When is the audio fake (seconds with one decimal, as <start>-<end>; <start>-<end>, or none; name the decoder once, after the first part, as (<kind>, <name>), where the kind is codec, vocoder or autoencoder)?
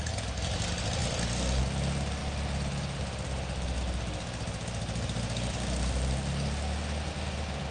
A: none